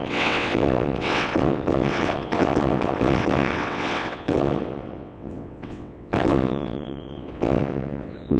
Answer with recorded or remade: remade